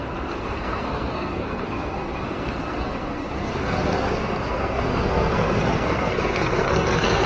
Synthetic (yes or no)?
yes